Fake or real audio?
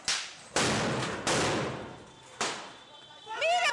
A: real